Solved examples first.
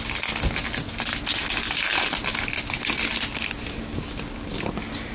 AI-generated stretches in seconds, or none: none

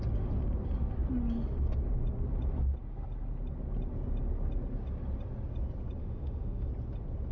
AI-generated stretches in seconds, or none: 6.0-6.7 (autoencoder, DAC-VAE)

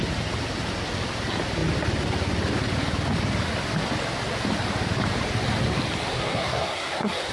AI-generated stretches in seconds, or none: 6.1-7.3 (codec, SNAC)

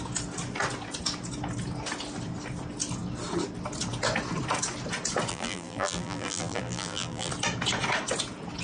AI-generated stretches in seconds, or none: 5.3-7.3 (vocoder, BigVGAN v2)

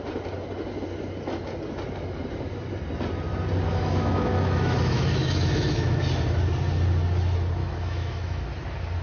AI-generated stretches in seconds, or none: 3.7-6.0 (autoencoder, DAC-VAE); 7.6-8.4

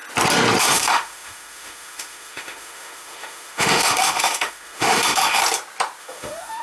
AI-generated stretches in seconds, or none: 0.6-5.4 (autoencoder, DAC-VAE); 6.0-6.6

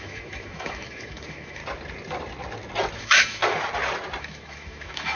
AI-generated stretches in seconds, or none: 0.0-1.6 (autoencoder, DAC-VAE); 3.0-3.4; 4.2-5.2

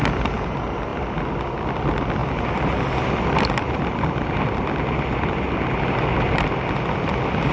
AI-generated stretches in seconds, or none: none